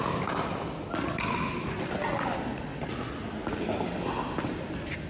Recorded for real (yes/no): yes